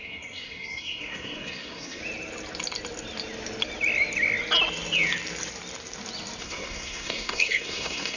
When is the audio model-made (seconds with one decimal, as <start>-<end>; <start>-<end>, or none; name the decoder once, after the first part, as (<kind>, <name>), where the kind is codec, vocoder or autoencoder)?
0.0-2.0 (codec, SNAC); 6.4-8.2